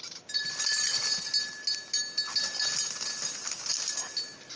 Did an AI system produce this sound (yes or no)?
no